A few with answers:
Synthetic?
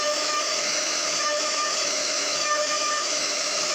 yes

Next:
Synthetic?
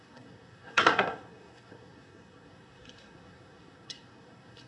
yes